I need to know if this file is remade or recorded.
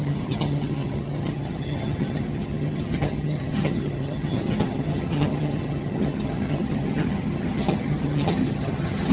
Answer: remade